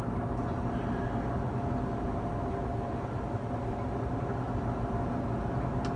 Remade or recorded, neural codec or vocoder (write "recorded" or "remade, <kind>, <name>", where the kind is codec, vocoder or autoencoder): recorded